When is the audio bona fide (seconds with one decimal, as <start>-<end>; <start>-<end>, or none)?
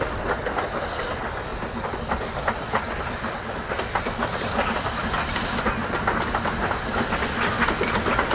0.0-8.3